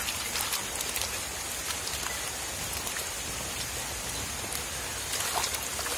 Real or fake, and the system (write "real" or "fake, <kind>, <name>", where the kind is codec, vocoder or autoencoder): real